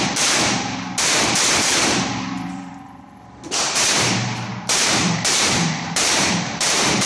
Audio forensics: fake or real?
fake